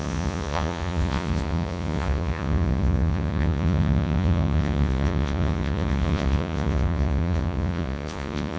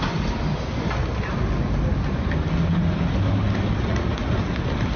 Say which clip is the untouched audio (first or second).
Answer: second